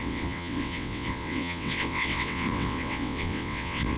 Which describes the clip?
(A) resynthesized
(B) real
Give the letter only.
A